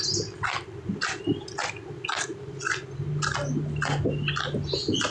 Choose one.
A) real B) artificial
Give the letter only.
A